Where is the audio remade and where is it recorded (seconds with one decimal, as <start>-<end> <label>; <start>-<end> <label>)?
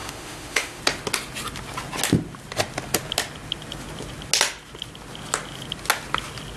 0.0-0.8 remade; 0.8-6.6 recorded